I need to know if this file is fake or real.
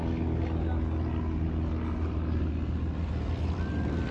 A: real